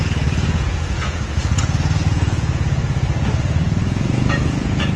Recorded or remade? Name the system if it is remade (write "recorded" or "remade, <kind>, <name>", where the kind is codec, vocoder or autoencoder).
remade, vocoder, Vocos